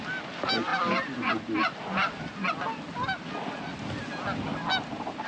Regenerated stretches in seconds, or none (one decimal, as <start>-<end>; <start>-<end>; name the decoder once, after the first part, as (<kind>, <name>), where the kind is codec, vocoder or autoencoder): none